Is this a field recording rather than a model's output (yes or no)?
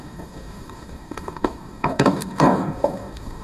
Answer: no